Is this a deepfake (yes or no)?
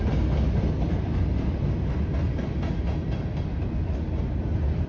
no